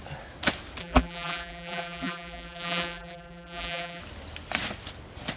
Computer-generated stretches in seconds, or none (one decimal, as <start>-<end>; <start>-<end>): 0.8-4.0